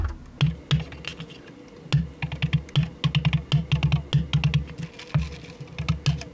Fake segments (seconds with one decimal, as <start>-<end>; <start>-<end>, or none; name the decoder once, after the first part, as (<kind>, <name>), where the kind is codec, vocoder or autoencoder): none